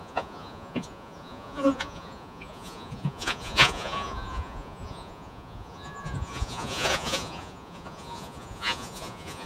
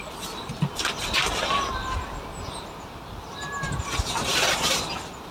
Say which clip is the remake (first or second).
first